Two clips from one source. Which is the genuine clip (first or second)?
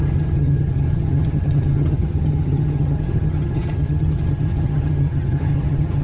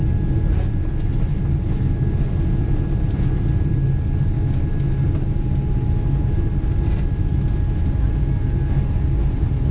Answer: second